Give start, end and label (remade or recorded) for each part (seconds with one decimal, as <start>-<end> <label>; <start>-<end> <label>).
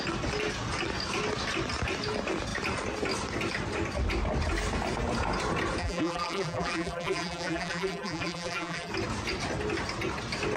0.0-5.8 recorded; 5.8-8.9 remade; 8.9-10.6 recorded